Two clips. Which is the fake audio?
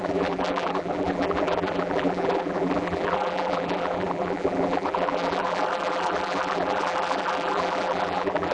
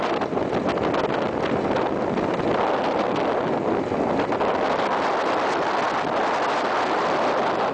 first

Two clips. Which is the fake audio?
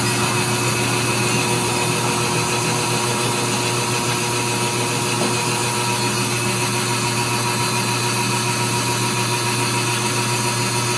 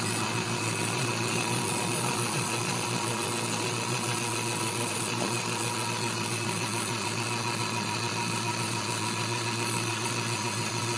second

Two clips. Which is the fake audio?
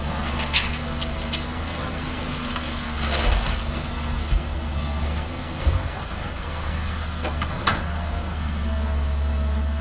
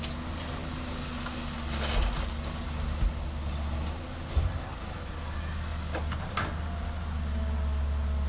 first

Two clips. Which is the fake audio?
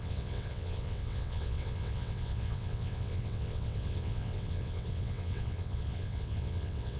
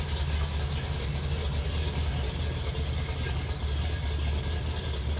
first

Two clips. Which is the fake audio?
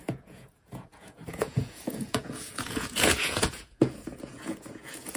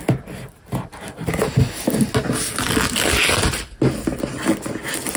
first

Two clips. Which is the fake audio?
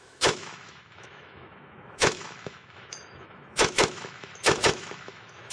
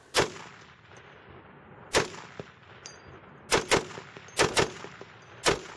first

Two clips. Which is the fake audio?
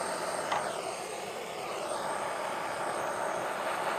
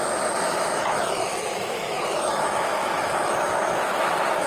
second